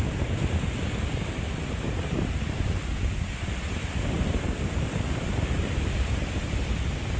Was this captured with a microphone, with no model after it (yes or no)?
no